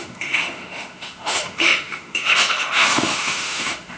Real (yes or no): no